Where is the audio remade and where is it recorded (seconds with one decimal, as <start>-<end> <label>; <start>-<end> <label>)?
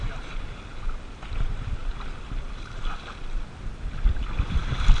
0.0-0.7 remade; 0.7-3.7 recorded; 3.7-5.0 remade